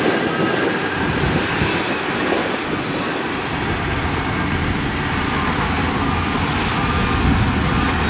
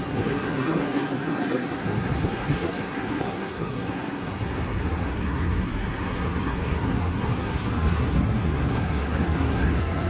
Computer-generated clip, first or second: second